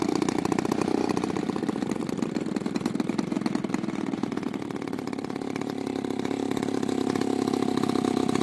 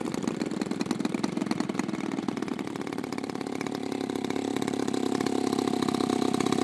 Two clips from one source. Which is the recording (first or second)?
first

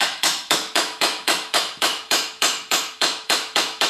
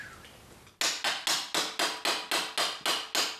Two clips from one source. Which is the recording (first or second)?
second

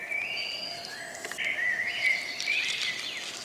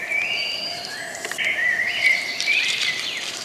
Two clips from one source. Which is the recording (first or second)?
first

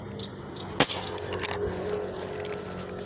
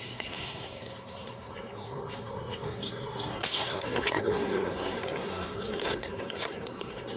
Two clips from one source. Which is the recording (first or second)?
first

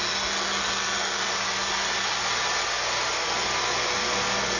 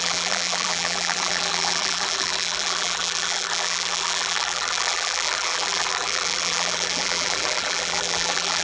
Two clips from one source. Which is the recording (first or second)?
first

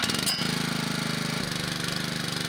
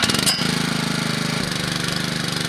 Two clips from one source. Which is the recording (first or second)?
first